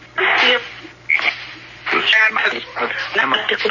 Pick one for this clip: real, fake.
real